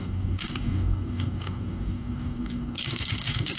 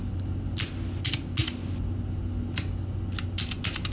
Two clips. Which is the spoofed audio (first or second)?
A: first